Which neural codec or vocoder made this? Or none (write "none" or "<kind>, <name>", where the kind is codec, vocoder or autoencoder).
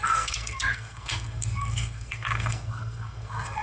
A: codec, SNAC